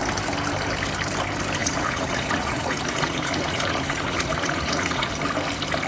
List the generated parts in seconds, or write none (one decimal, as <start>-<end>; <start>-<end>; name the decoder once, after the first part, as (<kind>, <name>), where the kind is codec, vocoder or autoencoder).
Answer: 1.6-5.1 (vocoder, Vocos)